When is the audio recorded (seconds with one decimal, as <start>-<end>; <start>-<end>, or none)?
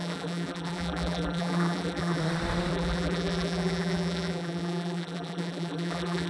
2.2-2.7